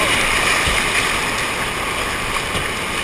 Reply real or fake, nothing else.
real